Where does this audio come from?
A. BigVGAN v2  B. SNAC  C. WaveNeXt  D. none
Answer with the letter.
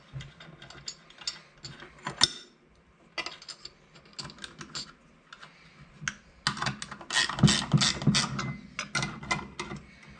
D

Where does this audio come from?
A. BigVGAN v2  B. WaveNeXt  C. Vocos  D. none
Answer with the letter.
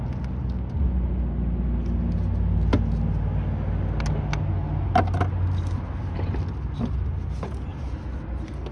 D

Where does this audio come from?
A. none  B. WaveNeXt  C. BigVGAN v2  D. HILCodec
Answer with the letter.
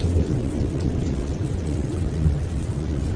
B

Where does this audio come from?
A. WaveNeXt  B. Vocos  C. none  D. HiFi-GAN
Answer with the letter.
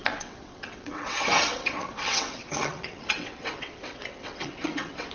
A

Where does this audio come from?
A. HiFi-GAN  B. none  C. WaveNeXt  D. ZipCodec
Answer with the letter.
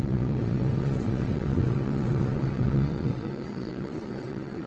C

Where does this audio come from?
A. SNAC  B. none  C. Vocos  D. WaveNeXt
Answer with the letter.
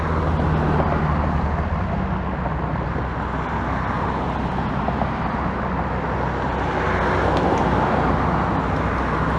B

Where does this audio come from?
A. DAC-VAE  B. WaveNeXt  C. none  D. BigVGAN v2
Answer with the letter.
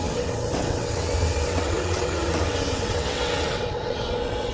B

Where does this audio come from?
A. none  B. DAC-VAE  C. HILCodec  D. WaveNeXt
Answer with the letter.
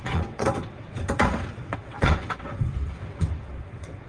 D